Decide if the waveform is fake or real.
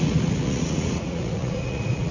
fake